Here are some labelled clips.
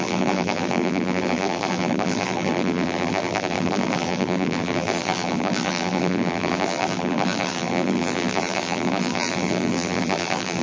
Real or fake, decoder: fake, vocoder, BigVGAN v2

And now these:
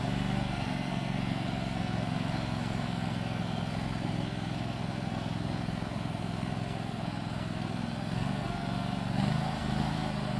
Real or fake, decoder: fake, codec, SNAC